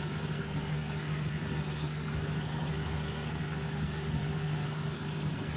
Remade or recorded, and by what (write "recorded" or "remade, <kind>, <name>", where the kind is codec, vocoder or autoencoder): remade, codec, SNAC